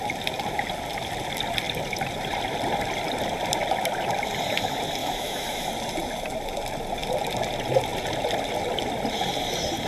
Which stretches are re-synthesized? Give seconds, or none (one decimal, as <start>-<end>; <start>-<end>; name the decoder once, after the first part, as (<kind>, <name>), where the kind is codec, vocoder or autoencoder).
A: 5.0-5.7 (autoencoder, DAC-VAE)